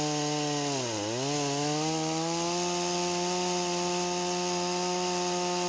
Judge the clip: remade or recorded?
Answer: recorded